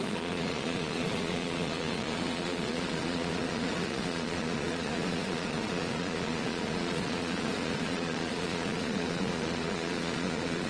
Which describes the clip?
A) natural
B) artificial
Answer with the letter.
B